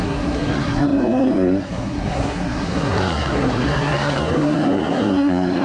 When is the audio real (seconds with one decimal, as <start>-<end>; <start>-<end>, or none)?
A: none